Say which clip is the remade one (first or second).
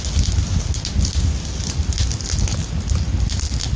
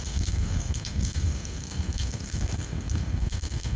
second